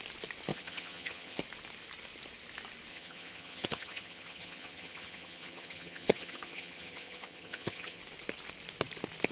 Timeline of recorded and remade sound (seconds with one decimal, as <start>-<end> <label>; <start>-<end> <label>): 0.0-0.5 recorded; 0.5-1.4 remade; 1.4-2.9 recorded; 2.9-8.0 remade; 8.0-9.3 recorded